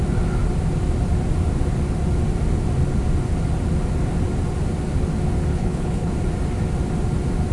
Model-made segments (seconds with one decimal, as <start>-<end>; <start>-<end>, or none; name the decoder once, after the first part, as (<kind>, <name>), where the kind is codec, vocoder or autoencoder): 5.5-6.1 (codec, HILCodec)